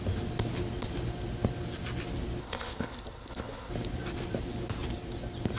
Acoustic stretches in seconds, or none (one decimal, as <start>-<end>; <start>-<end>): 0.0-2.4; 3.7-5.6